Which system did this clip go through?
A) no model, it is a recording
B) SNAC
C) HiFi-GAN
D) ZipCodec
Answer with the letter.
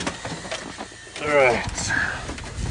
A